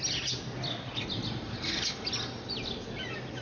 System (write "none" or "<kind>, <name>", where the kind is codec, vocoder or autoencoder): none